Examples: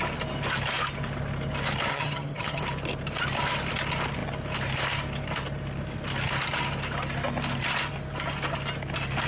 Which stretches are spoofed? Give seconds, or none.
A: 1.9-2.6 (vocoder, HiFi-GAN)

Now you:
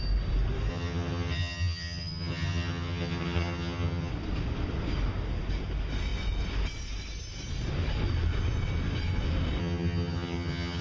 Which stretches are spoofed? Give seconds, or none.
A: 0.7-4.1 (vocoder, HiFi-GAN); 9.6-10.8

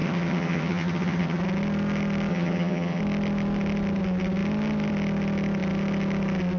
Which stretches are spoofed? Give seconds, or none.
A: 0.0-1.4 (vocoder, HiFi-GAN); 2.3-3.0

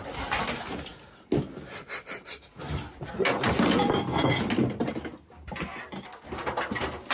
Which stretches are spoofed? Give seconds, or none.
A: none

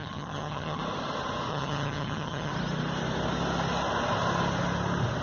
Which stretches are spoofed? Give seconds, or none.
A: 0.0-0.8 (vocoder, HiFi-GAN); 1.5-2.5